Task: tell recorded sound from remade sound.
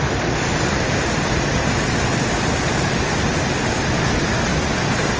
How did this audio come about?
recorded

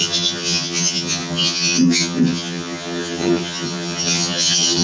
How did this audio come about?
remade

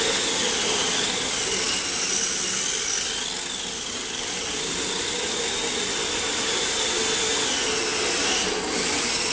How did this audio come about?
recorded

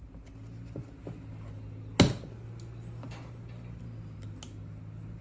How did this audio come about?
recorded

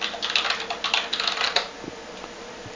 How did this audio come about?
recorded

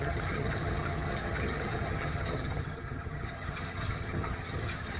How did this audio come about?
remade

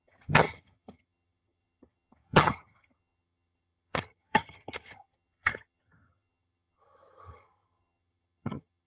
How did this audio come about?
remade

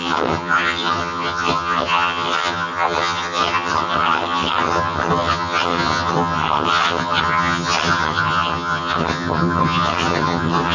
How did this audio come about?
remade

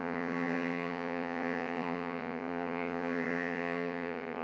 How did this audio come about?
remade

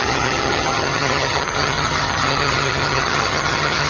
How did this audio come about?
remade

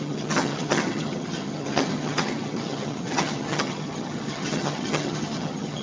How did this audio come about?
remade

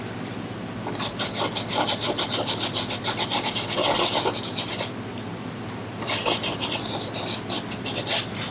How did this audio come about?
recorded